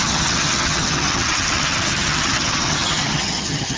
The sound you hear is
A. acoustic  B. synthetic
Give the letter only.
B